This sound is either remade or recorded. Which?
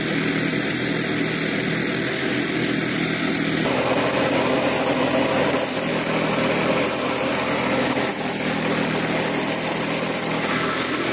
recorded